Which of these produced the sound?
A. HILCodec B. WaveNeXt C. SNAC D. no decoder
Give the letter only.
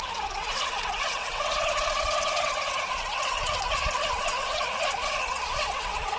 B